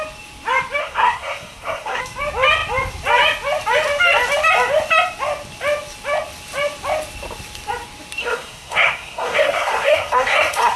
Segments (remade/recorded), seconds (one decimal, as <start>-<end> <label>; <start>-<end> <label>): 0.0-0.8 recorded; 0.8-2.0 remade; 2.0-8.2 recorded; 8.2-10.8 remade